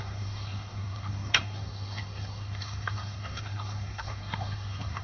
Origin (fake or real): fake